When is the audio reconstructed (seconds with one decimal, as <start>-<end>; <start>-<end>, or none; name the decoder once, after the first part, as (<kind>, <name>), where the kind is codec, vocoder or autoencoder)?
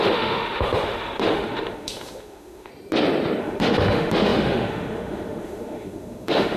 0.0-2.7 (autoencoder, DAC-VAE); 3.4-6.6